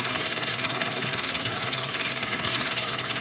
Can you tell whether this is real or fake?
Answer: fake